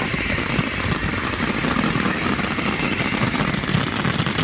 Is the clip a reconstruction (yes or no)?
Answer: no